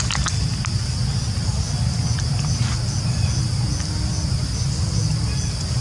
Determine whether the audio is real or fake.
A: real